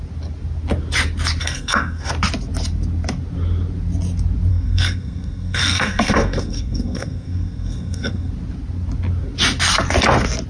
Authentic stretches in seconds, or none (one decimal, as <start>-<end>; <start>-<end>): 0.0-1.4; 2.1-4.5; 8.3-10.5

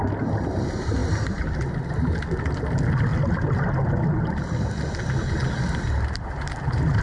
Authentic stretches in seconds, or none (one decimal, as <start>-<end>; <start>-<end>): 0.0-7.0

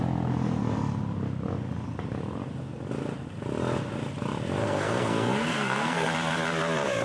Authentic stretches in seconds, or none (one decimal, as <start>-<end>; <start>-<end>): 0.0-4.6; 6.1-7.0

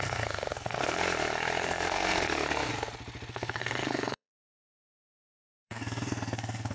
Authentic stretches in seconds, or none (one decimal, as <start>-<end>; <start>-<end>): 1.0-1.6; 2.7-3.3

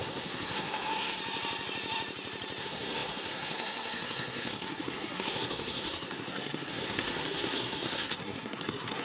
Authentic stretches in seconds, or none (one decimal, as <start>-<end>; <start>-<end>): 1.2-2.6

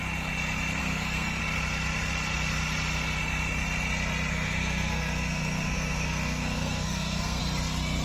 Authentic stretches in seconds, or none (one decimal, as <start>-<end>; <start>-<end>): 0.0-0.8; 1.4-4.3; 7.4-8.0